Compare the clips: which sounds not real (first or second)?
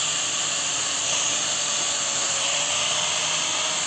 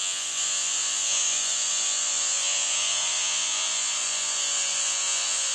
second